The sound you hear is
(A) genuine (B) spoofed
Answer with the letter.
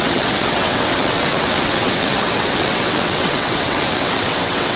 B